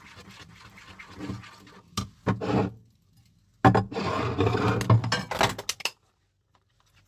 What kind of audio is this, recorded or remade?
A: recorded